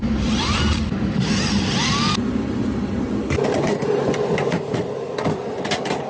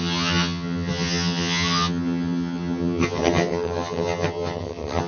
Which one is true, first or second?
first